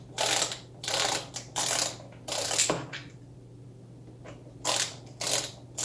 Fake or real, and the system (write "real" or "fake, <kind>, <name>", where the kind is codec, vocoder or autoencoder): fake, vocoder, BigVGAN v2